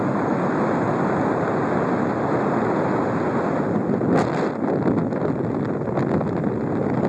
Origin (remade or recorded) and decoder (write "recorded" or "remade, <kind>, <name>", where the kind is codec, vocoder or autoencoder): recorded